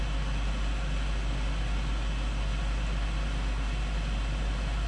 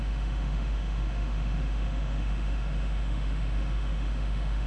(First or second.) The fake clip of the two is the second